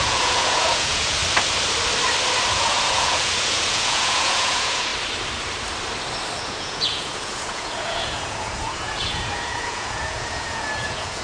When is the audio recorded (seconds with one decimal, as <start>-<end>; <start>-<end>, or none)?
1.2-2.5; 4.9-6.4